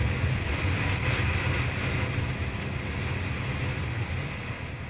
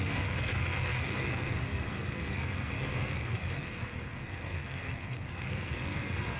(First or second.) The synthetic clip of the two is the second